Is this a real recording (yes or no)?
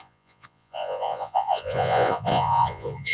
no